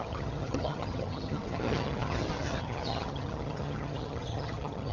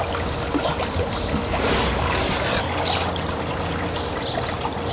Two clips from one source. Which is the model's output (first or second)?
first